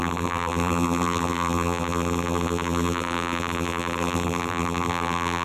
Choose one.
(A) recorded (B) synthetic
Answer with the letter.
B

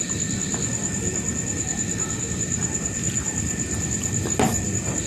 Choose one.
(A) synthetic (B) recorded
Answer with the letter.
A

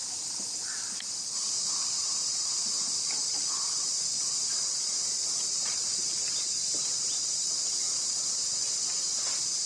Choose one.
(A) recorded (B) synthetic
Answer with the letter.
B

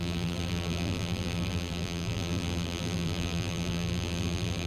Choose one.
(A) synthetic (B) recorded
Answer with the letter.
A